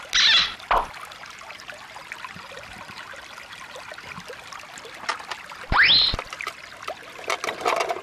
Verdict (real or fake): real